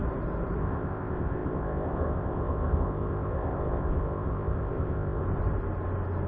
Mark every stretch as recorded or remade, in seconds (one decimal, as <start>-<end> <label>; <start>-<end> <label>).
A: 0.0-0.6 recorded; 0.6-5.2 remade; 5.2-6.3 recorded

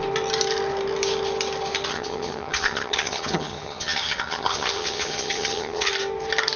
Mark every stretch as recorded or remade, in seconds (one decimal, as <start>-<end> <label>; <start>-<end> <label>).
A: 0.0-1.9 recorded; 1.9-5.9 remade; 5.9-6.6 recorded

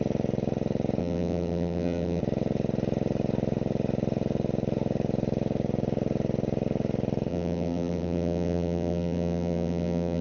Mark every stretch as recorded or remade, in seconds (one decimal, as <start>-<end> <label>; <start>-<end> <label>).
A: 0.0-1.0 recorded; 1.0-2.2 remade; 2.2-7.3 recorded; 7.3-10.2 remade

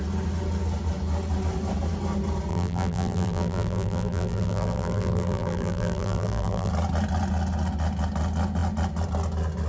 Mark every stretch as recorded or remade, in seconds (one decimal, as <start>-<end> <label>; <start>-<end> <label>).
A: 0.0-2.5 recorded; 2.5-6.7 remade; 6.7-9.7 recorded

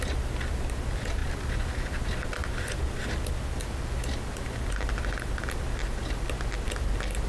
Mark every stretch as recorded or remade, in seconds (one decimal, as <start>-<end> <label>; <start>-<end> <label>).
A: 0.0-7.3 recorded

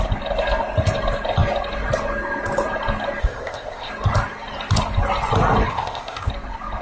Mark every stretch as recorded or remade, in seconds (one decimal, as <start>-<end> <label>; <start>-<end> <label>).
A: 0.0-3.2 recorded; 3.2-3.9 remade; 3.9-5.7 recorded; 5.7-6.3 remade; 6.3-6.8 recorded

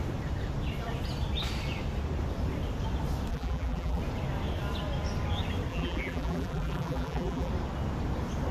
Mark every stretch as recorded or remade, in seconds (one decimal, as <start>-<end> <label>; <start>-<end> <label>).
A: 0.0-3.3 recorded; 3.3-4.0 remade; 4.0-5.7 recorded; 5.7-7.5 remade; 7.5-8.5 recorded